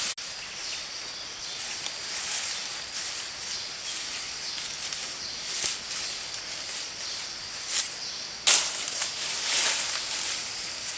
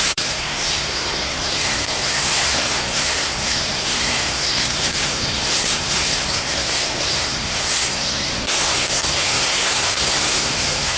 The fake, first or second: second